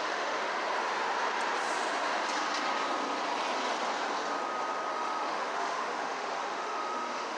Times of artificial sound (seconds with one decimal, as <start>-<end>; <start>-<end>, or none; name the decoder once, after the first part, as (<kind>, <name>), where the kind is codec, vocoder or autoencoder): 0.0-0.5 (autoencoder, DAC-VAE); 4.9-7.4